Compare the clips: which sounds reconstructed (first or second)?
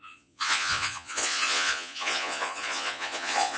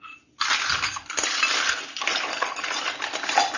first